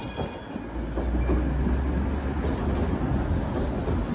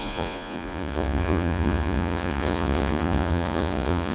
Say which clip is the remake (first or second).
second